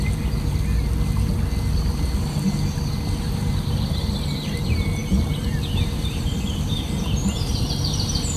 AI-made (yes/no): no